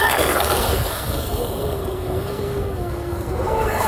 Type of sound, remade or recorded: remade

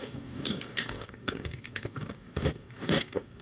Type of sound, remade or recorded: remade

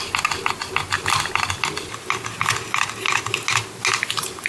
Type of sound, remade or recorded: recorded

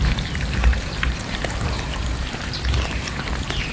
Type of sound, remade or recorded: remade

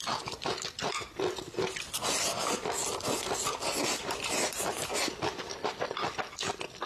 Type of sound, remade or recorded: recorded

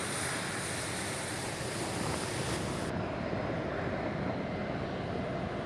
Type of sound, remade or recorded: recorded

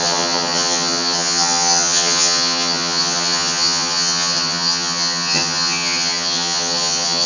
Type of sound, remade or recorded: remade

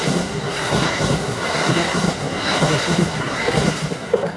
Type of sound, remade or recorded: remade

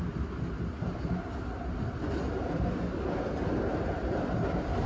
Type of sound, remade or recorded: recorded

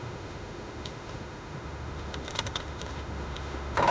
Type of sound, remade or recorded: remade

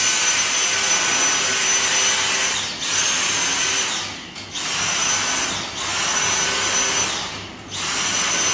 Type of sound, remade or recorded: recorded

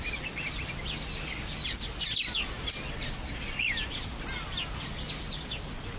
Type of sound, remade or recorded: recorded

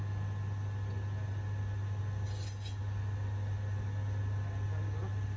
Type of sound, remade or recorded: recorded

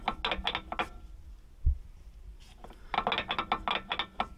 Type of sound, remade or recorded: recorded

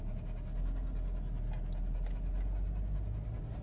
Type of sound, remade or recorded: recorded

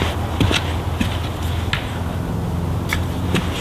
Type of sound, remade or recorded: recorded